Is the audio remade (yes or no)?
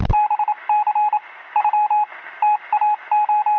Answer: no